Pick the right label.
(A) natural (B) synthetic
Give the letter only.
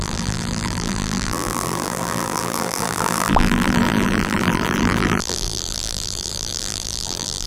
B